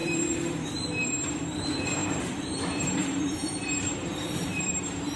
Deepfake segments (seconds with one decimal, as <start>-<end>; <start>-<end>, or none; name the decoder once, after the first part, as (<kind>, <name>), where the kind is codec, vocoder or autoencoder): 0.0-0.8 (vocoder, BigVGAN v2); 2.0-5.2